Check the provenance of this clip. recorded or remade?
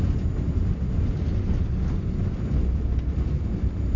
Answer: recorded